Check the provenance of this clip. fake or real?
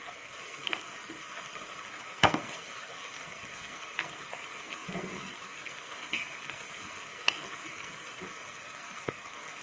fake